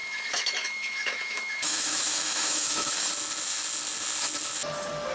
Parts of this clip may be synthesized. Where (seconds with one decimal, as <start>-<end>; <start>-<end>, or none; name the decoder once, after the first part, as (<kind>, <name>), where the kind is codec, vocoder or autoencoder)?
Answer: 0.0-3.1 (autoencoder, DAC-VAE)